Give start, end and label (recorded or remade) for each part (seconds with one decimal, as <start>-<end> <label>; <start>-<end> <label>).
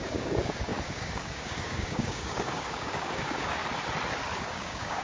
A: 0.0-3.6 remade; 3.6-4.4 recorded; 4.4-5.0 remade